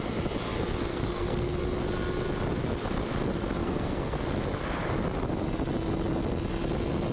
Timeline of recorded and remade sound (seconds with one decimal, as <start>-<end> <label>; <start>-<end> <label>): 0.0-0.9 recorded; 0.9-1.6 remade; 1.6-3.6 recorded; 3.6-4.2 remade; 4.2-7.1 recorded